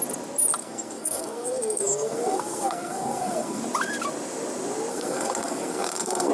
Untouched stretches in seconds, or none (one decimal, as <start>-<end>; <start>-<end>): 0.0-0.6; 3.6-4.9